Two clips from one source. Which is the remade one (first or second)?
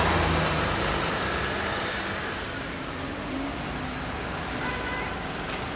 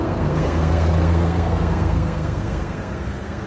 second